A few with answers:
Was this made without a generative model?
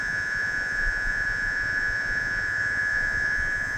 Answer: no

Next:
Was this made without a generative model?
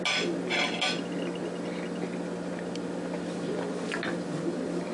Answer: yes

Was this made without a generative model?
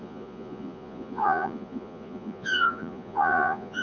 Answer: no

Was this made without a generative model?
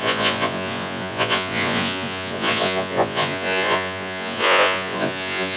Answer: no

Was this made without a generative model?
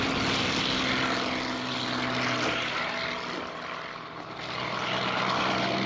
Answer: yes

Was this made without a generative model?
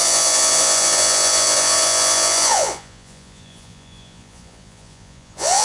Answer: no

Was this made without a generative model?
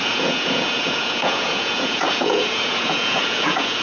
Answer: no